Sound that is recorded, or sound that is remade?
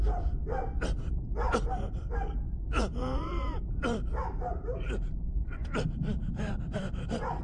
remade